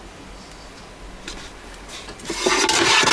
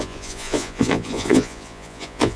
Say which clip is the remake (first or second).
second